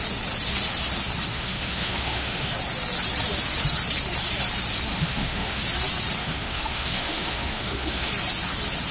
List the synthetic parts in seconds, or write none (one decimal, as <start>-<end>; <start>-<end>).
1.3-2.5; 4.9-5.6; 6.2-8.1